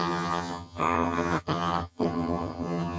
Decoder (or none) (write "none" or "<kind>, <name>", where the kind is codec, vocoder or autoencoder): vocoder, HiFi-GAN